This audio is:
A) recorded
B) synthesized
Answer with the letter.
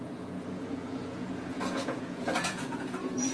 B